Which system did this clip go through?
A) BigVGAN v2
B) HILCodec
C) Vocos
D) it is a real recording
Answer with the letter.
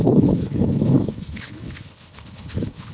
B